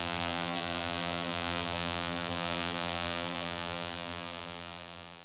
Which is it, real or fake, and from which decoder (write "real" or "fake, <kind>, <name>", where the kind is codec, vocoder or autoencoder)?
fake, vocoder, BigVGAN v2